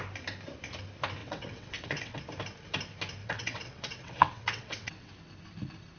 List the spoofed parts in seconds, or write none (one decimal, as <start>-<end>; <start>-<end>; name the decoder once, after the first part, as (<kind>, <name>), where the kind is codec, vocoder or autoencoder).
1.2-2.2 (vocoder, WaveNeXt); 3.2-5.1